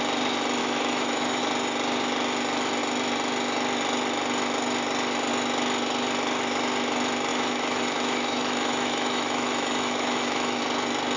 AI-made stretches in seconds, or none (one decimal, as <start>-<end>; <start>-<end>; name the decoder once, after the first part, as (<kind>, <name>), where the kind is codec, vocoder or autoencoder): 0.6-1.4 (autoencoder, DAC-VAE); 7.3-10.6